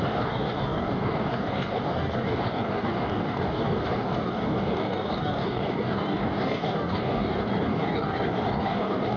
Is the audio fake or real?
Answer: fake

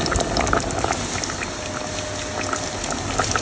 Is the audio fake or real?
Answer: real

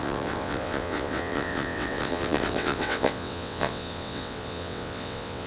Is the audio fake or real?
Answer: fake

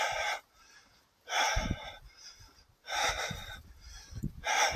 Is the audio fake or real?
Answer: fake